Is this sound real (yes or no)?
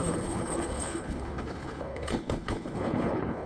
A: no